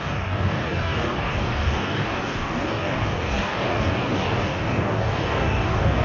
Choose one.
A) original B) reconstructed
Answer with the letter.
B